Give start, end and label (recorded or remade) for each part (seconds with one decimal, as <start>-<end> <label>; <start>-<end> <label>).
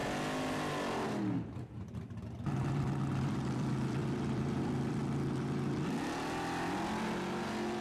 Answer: 0.0-2.6 recorded; 2.6-5.0 remade; 5.0-7.8 recorded